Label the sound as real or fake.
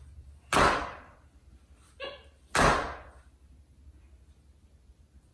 real